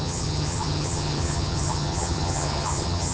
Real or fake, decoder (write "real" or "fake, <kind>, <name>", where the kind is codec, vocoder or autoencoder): fake, vocoder, HiFi-GAN